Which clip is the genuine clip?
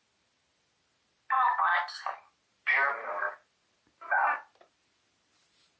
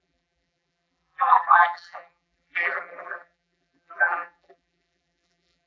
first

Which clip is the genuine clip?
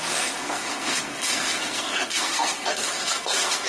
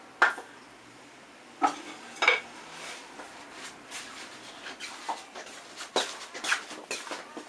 second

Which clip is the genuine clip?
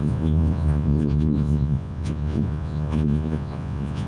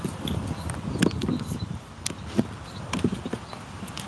second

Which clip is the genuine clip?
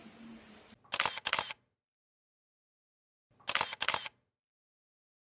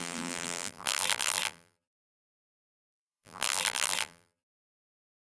first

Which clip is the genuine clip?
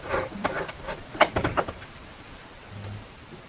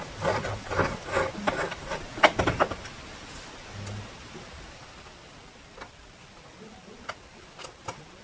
second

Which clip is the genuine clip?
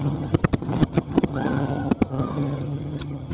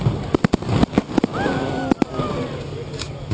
second